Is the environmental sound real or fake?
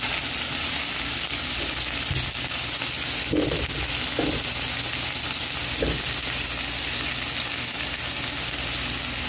real